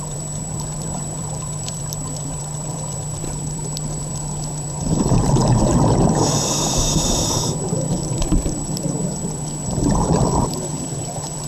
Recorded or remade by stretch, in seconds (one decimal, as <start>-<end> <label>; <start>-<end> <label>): 0.0-5.4 remade; 5.4-6.3 recorded; 6.3-11.5 remade

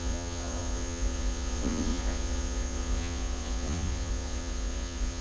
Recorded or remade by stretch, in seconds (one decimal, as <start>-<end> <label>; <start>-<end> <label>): 0.0-5.2 remade